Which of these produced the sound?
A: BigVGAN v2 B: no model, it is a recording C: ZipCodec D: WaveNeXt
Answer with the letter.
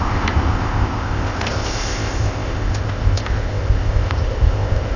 C